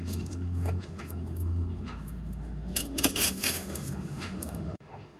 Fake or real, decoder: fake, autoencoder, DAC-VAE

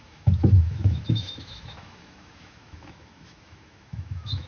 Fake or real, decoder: fake, autoencoder, DAC-VAE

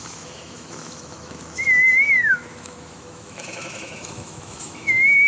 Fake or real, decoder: fake, autoencoder, DAC-VAE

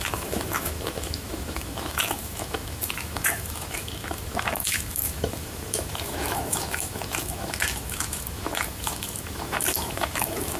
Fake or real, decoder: fake, autoencoder, DAC-VAE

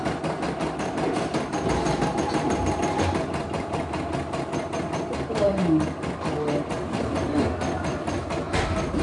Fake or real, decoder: real